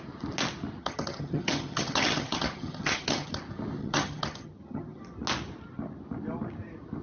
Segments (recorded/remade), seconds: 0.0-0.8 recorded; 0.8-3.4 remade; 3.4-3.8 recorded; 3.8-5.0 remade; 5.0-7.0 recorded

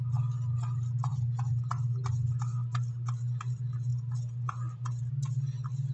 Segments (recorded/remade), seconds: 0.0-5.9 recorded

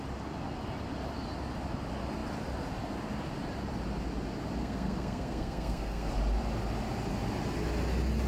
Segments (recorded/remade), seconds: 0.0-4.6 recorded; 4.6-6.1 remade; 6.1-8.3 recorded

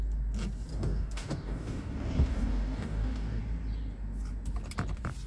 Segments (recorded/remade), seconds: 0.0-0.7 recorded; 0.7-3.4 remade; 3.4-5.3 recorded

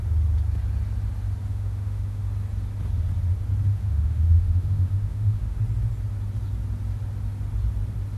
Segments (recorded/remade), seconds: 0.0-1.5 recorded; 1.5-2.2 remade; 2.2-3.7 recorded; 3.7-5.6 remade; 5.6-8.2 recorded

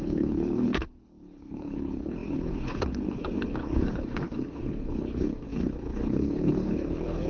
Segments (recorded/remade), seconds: 0.0-7.3 remade

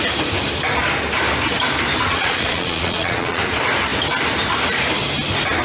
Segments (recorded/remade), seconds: 0.0-2.1 recorded; 2.1-3.4 remade; 3.4-5.6 recorded